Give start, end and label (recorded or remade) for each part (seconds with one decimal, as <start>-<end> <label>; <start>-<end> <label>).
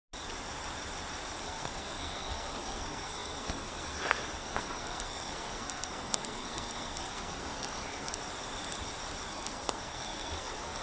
0.0-1.4 recorded; 1.4-8.2 remade; 8.2-9.3 recorded; 9.3-10.8 remade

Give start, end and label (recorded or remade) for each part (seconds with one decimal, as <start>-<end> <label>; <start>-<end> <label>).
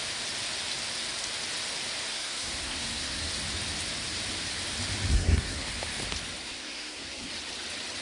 0.0-2.1 recorded; 2.1-3.3 remade; 3.3-5.1 recorded; 5.1-5.7 remade; 5.7-6.4 recorded; 6.4-7.3 remade; 7.3-8.0 recorded